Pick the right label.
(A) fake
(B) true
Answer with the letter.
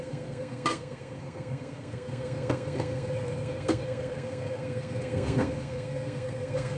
A